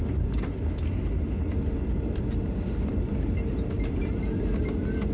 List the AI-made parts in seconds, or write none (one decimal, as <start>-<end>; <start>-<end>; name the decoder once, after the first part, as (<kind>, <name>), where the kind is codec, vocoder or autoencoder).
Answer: 1.5-4.6 (vocoder, BigVGAN v2)